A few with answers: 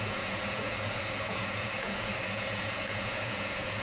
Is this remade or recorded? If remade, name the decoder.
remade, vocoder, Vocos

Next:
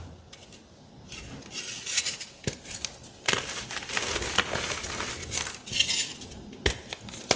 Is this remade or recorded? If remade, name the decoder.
recorded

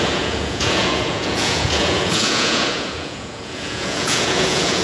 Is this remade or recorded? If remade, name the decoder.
remade, vocoder, Vocos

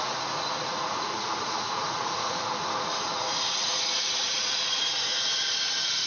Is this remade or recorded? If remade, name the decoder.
remade, vocoder, Vocos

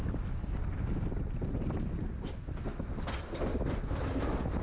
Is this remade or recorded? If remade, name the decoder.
recorded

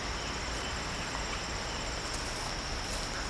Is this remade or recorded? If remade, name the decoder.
recorded